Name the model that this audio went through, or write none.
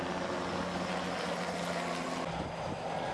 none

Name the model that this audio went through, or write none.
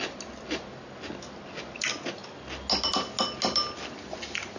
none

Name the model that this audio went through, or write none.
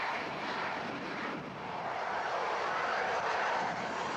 vocoder, BigVGAN v2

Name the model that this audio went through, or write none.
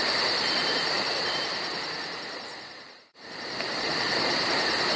vocoder, BigVGAN v2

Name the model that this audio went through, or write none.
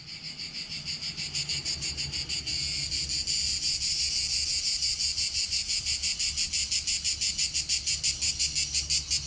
none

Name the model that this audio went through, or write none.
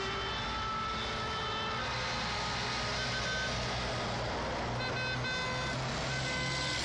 none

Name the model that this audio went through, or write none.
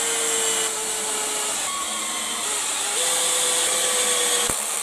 none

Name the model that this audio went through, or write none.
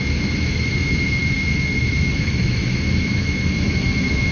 autoencoder, DAC-VAE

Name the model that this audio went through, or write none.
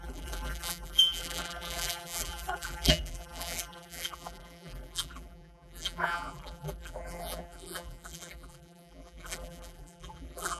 vocoder, BigVGAN v2